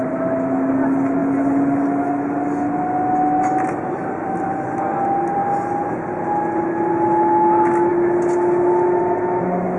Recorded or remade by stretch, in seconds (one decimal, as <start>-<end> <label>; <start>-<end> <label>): 0.0-9.8 recorded